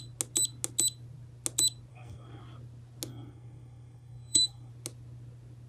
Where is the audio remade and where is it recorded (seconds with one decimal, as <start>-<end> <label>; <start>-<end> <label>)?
0.0-1.9 recorded; 1.9-2.4 remade; 2.4-3.1 recorded; 3.1-4.7 remade; 4.7-5.7 recorded